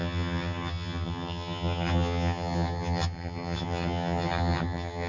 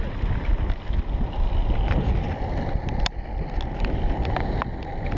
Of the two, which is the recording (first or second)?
second